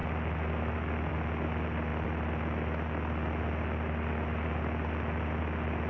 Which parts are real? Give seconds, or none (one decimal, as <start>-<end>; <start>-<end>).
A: 0.0-5.9